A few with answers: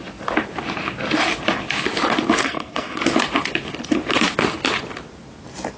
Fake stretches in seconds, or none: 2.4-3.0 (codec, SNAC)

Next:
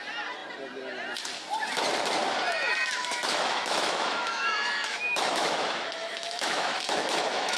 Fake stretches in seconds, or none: 3.0-7.6 (autoencoder, DAC-VAE)

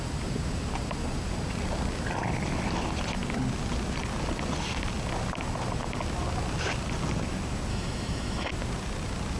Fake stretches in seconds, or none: 7.7-8.5 (autoencoder, DAC-VAE)

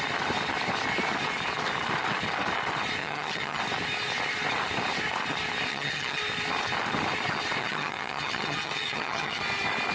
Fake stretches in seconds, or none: 3.0-3.6 (vocoder, HiFi-GAN); 5.7-6.2; 7.6-9.4